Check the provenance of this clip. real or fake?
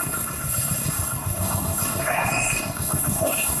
fake